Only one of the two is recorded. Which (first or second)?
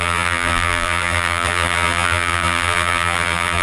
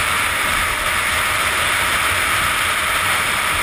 second